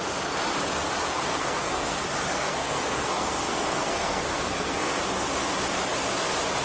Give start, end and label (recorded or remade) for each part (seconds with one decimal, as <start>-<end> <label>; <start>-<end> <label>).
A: 0.0-1.3 recorded; 1.3-5.0 remade; 5.0-6.6 recorded